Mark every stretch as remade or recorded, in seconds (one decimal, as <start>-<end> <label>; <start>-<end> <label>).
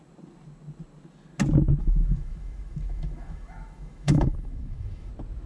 0.0-1.8 recorded; 1.8-5.1 remade; 5.1-5.5 recorded